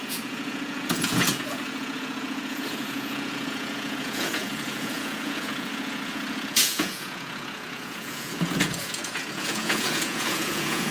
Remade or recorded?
remade